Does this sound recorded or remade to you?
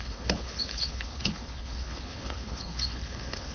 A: remade